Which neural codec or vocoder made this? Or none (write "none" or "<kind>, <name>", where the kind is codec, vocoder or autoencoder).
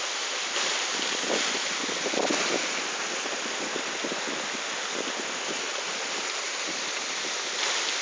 none